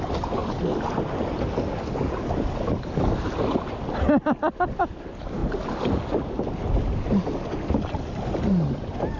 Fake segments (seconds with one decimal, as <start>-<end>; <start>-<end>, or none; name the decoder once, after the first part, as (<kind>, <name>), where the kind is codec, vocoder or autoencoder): none